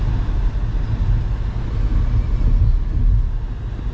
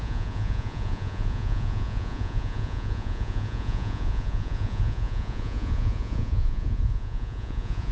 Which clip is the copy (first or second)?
second